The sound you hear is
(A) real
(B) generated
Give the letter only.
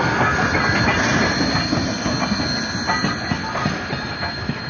A